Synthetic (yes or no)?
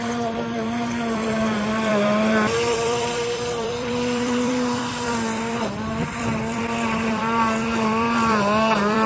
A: yes